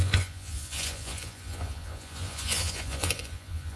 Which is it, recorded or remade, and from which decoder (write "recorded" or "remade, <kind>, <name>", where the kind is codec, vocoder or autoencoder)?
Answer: remade, vocoder, Vocos